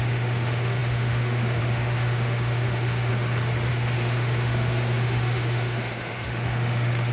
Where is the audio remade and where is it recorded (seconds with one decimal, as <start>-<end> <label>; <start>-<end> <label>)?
0.0-3.1 remade; 3.1-3.7 recorded; 3.7-7.1 remade